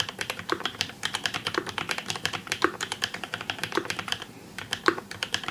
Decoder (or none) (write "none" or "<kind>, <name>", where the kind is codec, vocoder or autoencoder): vocoder, BigVGAN v2